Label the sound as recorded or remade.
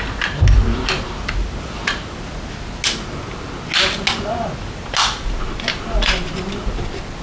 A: recorded